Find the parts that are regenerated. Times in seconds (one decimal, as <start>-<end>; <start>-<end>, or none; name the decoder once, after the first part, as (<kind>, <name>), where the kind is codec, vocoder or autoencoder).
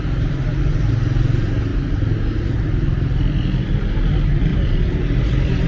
4.5-5.7 (vocoder, BigVGAN v2)